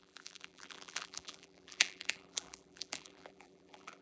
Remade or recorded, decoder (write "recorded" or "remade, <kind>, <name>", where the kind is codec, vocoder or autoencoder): remade, vocoder, BigVGAN v2